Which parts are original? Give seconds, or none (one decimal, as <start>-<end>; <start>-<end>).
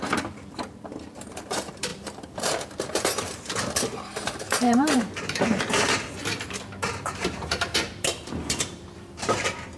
none